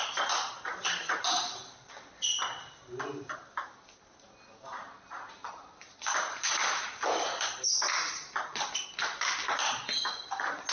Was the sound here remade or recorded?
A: recorded